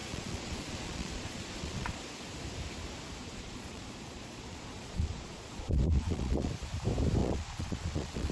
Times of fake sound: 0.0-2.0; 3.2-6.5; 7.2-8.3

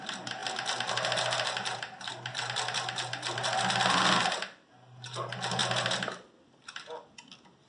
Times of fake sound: none

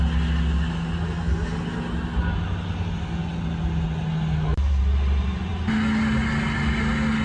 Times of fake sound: none

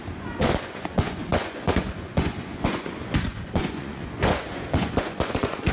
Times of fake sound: 0.0-5.7